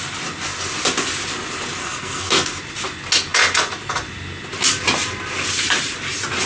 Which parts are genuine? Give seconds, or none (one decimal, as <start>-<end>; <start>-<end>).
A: 0.0-1.8; 2.6-6.5